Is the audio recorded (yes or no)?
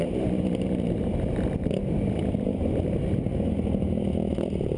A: no